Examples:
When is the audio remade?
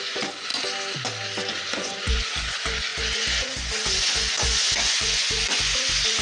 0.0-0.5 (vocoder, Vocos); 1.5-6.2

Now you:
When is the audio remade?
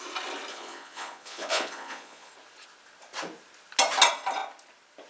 0.5-2.3 (vocoder, Vocos)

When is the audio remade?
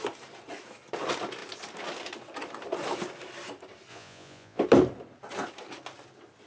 3.9-4.6 (vocoder, Vocos)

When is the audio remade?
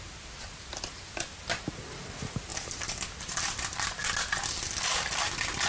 none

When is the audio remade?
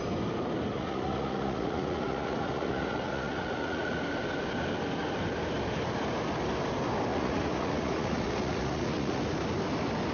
0.7-4.0 (vocoder, Vocos); 7.1-9.2